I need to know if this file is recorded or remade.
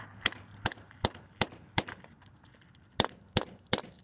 recorded